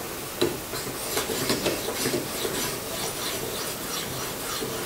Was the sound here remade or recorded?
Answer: recorded